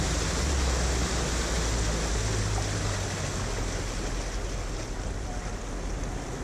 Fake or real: real